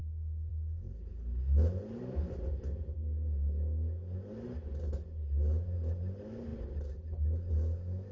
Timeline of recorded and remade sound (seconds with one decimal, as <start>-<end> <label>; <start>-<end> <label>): 0.0-8.1 recorded